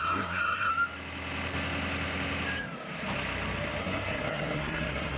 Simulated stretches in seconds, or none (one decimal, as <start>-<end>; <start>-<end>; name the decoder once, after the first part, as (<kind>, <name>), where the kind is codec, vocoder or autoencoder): 0.0-0.7 (codec, SNAC); 3.8-5.2